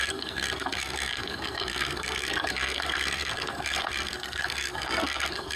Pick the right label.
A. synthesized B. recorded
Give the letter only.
A